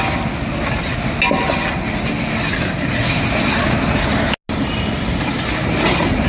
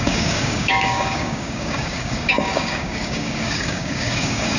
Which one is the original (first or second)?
first